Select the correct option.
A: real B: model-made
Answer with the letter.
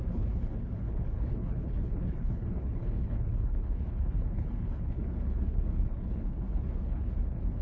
B